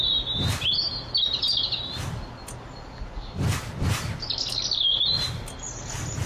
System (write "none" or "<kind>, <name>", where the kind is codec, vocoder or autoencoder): none